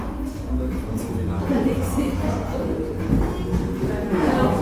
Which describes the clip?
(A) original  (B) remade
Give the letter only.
A